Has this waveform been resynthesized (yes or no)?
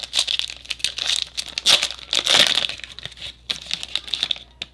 no